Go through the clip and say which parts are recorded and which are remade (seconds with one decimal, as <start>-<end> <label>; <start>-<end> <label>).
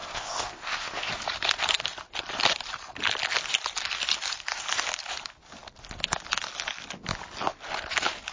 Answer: 0.0-1.1 remade; 1.1-8.3 recorded